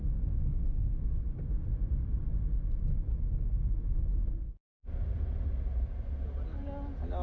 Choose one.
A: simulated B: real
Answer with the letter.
B